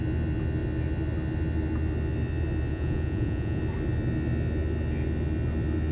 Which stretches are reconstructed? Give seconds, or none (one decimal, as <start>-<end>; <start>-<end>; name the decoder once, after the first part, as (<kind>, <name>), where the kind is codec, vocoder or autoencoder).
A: 2.7-3.6 (vocoder, Vocos)

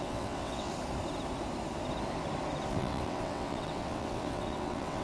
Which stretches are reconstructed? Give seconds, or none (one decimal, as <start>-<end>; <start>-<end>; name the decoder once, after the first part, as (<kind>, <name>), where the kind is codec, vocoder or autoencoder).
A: 0.0-0.7 (vocoder, WaveNeXt); 2.7-5.0

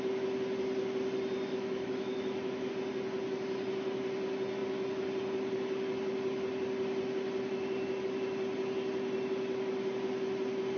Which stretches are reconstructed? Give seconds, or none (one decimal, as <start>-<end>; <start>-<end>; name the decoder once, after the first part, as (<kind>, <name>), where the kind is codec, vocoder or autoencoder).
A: 1.5-2.7 (autoencoder, DAC-VAE)

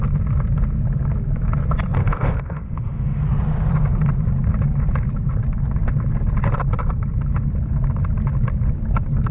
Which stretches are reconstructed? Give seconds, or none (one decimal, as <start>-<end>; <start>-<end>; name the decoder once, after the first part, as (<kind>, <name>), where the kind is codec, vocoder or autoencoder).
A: 2.0-3.2 (autoencoder, DAC-VAE)